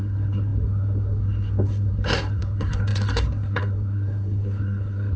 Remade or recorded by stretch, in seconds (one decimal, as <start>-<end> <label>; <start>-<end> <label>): 0.0-5.2 remade